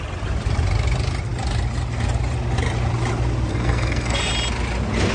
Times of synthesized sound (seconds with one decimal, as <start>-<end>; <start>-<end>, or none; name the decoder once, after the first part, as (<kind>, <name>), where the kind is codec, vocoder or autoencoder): 3.5-4.3 (codec, SNAC)